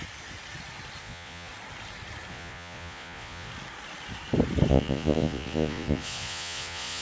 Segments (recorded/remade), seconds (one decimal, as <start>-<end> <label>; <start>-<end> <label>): 0.0-1.0 recorded; 1.0-1.5 remade; 1.5-2.3 recorded; 2.3-3.5 remade; 3.5-4.7 recorded; 4.7-7.0 remade

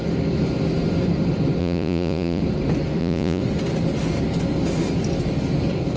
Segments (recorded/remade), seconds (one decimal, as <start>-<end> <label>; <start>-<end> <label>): 0.0-1.6 recorded; 1.6-2.4 remade; 2.4-3.0 recorded; 3.0-3.4 remade; 3.4-6.0 recorded

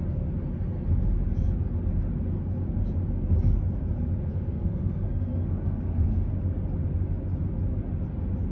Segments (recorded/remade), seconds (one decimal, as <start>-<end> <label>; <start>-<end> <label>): 0.0-4.3 recorded; 4.3-6.3 remade; 6.3-8.5 recorded